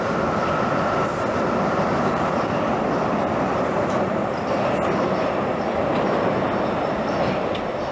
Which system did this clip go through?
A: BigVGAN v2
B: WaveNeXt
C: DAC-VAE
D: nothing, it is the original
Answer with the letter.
D